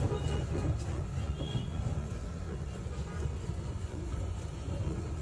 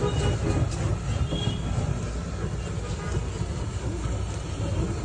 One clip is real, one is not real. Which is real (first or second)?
second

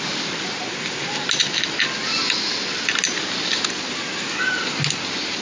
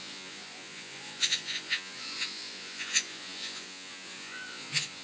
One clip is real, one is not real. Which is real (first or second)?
first